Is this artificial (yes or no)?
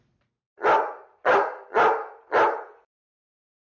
no